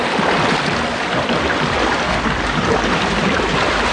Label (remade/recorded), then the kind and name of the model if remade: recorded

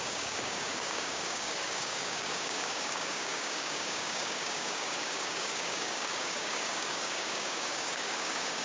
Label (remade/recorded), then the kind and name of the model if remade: remade, codec, DAC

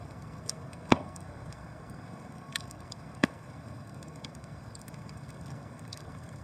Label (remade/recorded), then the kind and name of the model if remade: remade, codec, SNAC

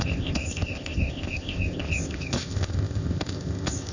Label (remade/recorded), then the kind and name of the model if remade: remade, codec, ZipCodec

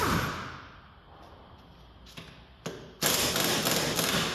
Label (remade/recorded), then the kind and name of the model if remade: recorded